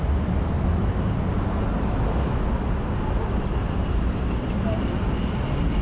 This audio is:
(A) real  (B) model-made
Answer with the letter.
A